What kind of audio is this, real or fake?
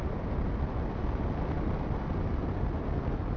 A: real